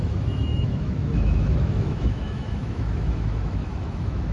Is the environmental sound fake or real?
fake